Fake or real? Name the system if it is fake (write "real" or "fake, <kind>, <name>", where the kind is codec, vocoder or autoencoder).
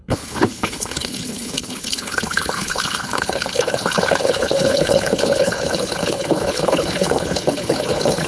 fake, codec, HILCodec